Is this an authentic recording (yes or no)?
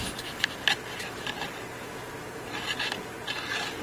no